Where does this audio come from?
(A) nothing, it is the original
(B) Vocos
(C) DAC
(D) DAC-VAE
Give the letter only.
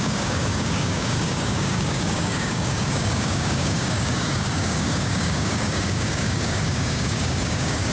C